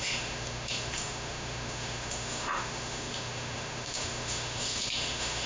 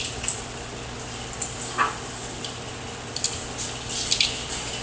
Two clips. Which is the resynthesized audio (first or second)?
first